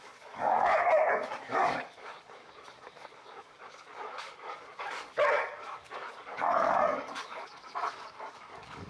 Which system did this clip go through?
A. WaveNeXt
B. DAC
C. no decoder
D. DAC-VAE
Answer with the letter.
B